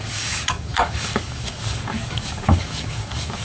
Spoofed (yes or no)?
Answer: yes